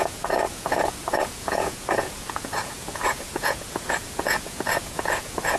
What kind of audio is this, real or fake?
fake